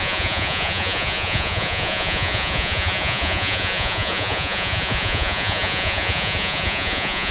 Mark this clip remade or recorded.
remade